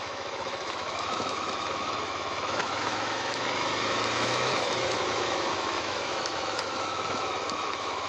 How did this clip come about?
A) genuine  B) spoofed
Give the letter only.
B